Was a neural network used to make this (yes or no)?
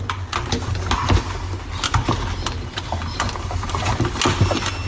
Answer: no